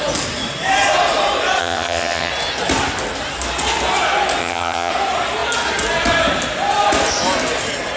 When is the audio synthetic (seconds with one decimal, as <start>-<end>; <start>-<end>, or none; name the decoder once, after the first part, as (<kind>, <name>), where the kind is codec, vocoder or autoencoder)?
1.6-2.3 (vocoder, HiFi-GAN); 4.4-4.9

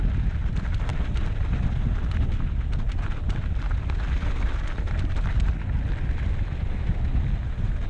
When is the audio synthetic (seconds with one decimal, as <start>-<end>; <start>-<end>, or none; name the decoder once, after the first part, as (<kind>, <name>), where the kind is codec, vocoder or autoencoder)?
none

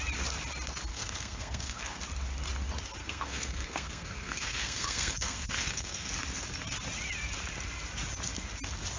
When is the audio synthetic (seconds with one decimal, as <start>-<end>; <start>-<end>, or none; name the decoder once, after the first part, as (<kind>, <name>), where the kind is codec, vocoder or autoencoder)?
0.9-2.0 (codec, SNAC); 3.0-6.1

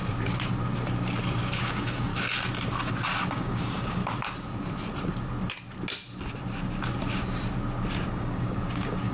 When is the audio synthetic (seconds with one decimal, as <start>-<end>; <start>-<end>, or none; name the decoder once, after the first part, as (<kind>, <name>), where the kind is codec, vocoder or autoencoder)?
1.6-2.1 (codec, DAC); 3.3-4.0; 8.1-9.1

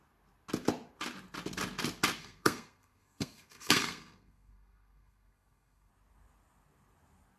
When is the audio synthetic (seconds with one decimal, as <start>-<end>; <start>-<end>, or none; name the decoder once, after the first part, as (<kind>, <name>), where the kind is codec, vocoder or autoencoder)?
2.2-5.9 (codec, SNAC)

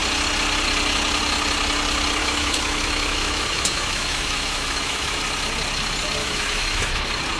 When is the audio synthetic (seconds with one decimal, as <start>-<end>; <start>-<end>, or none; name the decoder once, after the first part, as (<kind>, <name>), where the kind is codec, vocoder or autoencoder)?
2.2-5.2 (autoencoder, DAC-VAE); 6.2-7.0